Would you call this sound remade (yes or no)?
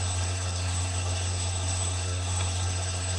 yes